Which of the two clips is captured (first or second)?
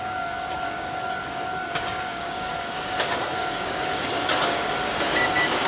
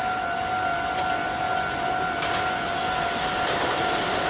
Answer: second